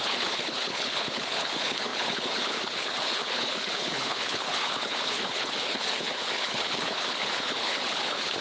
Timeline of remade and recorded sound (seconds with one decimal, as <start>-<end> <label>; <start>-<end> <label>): 0.0-8.4 remade